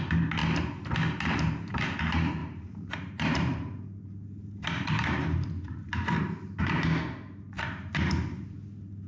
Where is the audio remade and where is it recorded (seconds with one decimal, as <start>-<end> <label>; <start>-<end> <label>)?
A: 0.0-0.4 remade; 0.4-1.3 recorded; 1.3-9.1 remade